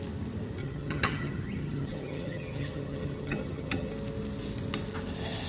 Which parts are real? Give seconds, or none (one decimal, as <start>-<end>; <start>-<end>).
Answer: 0.0-0.6; 3.9-5.5